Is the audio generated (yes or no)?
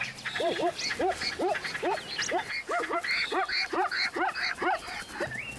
no